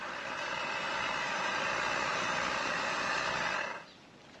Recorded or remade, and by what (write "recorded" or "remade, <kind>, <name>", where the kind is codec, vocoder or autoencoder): recorded